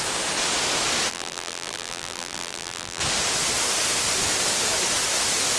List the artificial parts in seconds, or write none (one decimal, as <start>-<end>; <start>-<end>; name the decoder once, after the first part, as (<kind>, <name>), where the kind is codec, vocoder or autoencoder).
1.1-3.0 (vocoder, BigVGAN v2)